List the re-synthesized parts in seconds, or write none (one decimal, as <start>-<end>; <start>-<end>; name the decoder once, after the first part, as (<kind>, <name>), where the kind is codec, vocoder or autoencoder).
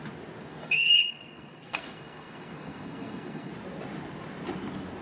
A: 0.5-3.5 (codec, SNAC)